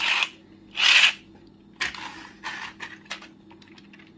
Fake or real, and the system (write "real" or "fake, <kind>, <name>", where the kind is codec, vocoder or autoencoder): real